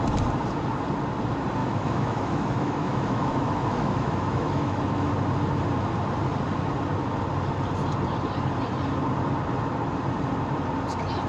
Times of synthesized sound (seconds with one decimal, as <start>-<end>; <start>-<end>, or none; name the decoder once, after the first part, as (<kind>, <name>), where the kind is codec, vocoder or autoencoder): 1.6-5.1 (autoencoder, DAC-VAE)